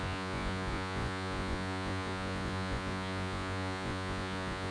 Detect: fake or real fake